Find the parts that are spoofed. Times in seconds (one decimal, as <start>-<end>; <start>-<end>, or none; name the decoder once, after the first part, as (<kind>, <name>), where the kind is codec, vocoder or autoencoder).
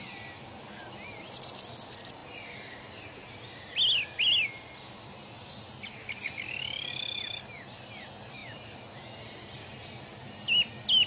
none